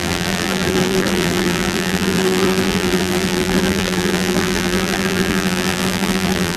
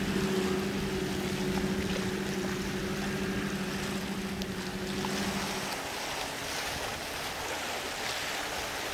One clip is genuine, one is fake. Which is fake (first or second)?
first